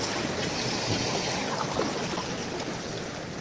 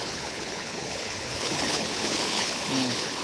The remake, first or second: second